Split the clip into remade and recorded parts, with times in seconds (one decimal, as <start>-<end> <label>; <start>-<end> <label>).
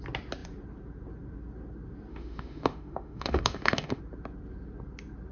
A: 0.0-2.1 recorded; 2.1-4.0 remade; 4.0-5.3 recorded